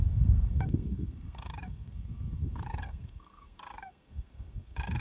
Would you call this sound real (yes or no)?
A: no